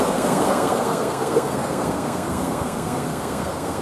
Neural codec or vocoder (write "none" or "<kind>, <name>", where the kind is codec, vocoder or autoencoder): codec, SNAC